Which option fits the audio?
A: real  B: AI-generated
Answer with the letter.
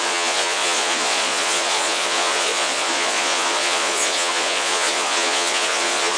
B